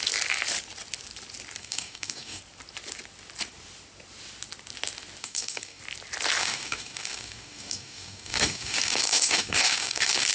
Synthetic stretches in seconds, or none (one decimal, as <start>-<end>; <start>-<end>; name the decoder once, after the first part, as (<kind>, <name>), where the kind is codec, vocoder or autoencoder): 1.6-2.4 (codec, DAC); 5.2-5.8; 6.4-10.3